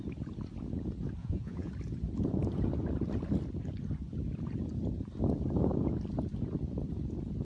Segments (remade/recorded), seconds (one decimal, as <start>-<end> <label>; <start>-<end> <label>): 0.0-1.2 recorded; 1.2-1.7 remade; 1.7-7.4 recorded